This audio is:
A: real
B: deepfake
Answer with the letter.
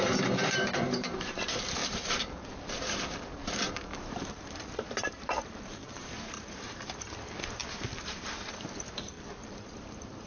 B